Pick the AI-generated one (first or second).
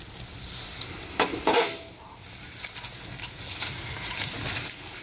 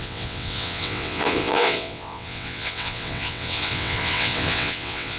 second